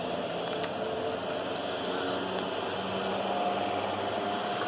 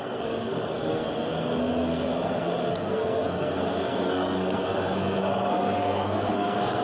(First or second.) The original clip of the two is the first